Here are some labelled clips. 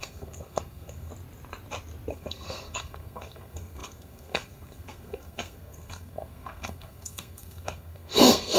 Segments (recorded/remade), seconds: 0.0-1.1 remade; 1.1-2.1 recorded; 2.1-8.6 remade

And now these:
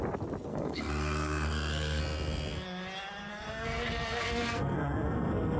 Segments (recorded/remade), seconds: 0.0-0.5 recorded; 0.5-2.0 remade; 2.0-3.3 recorded; 3.3-5.6 remade

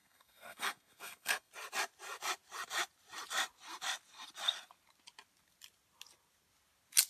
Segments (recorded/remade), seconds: 0.0-1.5 remade; 1.5-7.1 recorded